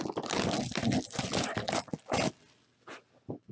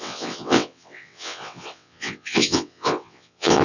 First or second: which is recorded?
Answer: first